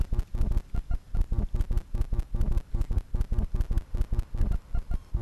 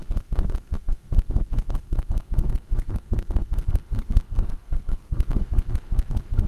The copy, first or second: second